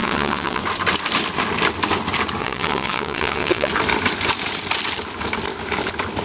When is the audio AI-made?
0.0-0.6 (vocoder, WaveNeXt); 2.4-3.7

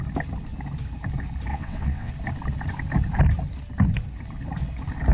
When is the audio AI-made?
1.5-2.1 (vocoder, WaveNeXt)

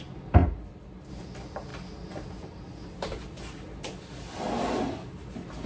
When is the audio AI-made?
none

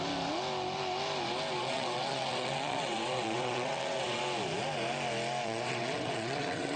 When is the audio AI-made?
1.6-4.2 (vocoder, WaveNeXt); 5.4-6.8

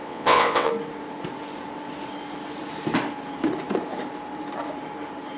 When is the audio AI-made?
0.0-0.7 (vocoder, WaveNeXt)

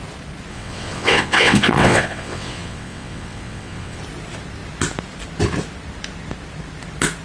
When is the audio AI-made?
0.5-4.0 (vocoder, WaveNeXt)